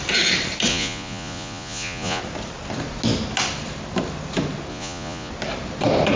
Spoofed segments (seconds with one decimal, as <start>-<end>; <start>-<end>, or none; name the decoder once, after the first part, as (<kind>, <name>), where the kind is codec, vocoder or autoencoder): 0.7-2.2 (vocoder, Vocos); 4.7-5.3